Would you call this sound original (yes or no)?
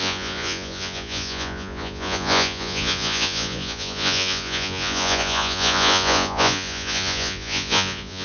no